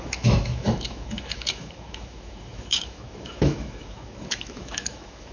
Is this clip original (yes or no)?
no